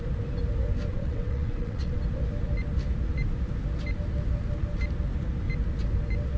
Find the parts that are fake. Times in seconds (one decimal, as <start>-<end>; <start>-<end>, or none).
0.9-2.0